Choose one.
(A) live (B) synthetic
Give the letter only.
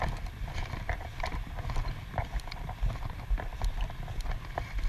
A